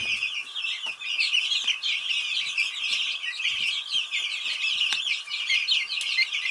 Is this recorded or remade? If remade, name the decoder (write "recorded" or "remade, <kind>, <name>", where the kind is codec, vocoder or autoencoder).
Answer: recorded